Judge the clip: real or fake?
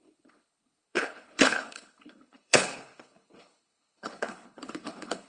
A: fake